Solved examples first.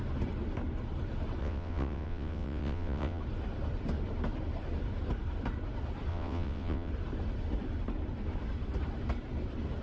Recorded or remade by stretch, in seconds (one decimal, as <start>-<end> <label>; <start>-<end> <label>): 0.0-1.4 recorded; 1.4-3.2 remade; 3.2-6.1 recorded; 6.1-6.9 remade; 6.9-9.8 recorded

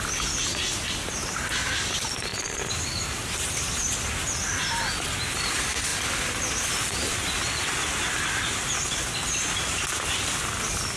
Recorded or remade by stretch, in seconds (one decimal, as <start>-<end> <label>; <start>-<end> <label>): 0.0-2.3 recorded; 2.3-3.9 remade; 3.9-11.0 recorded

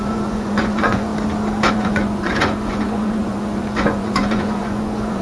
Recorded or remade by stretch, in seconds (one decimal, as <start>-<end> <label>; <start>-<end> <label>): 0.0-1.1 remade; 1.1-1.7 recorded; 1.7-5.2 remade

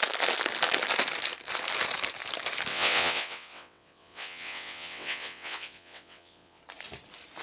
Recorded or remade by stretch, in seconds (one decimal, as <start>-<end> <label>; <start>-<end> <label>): 0.0-2.7 recorded; 2.7-6.6 remade; 6.6-7.4 recorded

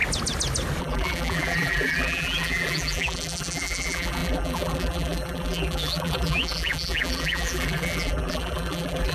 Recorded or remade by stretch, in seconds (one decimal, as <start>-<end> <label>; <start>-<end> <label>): 0.0-0.8 recorded; 0.8-9.1 remade

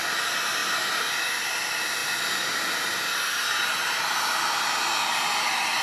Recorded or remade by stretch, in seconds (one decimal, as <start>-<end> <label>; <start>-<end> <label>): 0.0-5.8 recorded